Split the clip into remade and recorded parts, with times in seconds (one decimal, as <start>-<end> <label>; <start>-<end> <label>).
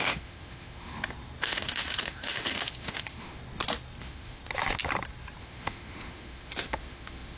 0.0-0.9 remade; 0.9-1.4 recorded; 1.4-3.4 remade; 3.4-4.0 recorded; 4.0-4.4 remade; 4.4-5.4 recorded; 5.4-7.4 remade